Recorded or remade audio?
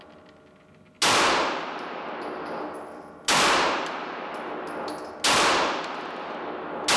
recorded